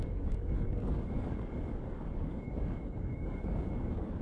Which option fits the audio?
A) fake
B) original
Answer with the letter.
A